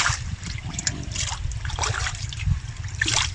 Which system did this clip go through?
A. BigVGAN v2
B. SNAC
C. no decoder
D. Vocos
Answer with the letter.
A